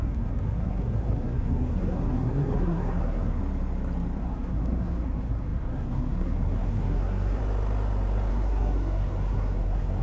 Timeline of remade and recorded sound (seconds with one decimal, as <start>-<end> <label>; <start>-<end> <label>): 0.0-3.4 remade; 3.4-4.2 recorded; 4.2-7.4 remade; 7.4-8.3 recorded; 8.3-10.0 remade